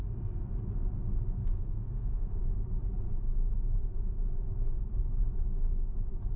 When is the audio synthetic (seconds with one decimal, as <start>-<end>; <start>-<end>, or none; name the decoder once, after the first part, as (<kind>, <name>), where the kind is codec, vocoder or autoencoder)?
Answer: 1.4-2.4 (autoencoder, DAC-VAE)